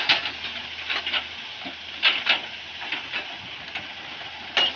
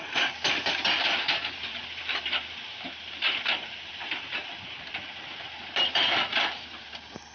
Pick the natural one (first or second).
first